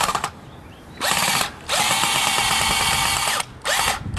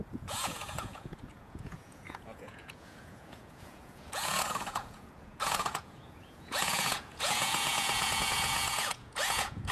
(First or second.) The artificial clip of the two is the second